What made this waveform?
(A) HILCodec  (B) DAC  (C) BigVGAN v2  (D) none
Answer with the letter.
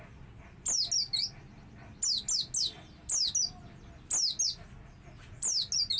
D